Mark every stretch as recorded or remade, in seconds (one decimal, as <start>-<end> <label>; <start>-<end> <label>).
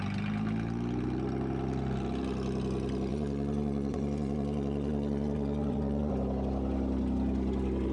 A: 0.0-3.1 recorded; 3.1-6.1 remade; 6.1-7.9 recorded